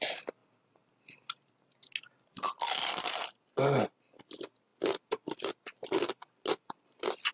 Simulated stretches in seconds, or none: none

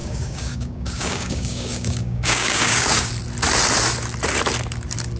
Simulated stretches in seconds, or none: 0.0-3.1 (codec, DAC)

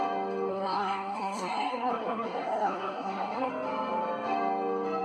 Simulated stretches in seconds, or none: 0.5-3.5 (codec, SNAC)

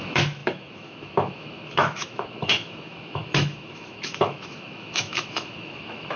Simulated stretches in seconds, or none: 0.0-6.2 (autoencoder, DAC-VAE)

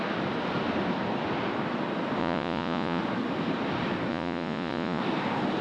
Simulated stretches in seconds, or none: 2.2-3.0 (vocoder, Vocos); 4.1-5.0